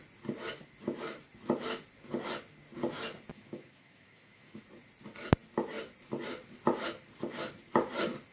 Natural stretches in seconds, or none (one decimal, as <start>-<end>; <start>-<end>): 0.0-3.3; 4.6-8.3